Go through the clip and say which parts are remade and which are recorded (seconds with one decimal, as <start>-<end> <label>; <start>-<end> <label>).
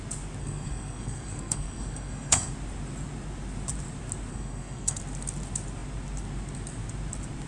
0.0-0.4 recorded; 0.4-2.5 remade; 2.5-4.3 recorded; 4.3-5.0 remade; 5.0-7.5 recorded